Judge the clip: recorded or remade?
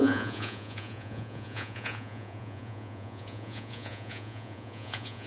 remade